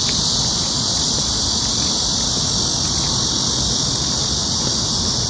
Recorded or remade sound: recorded